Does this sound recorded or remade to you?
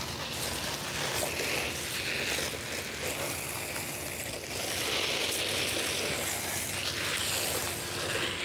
recorded